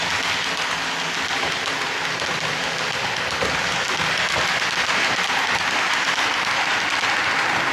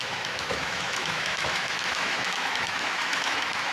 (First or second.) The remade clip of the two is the second